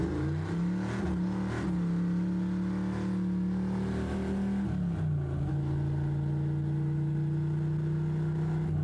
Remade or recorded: recorded